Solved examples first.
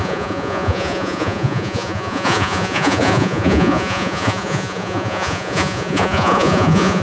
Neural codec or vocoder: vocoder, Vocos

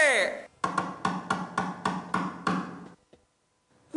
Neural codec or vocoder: none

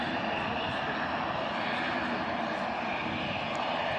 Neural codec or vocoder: none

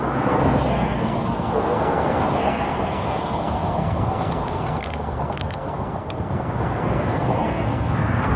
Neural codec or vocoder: codec, SNAC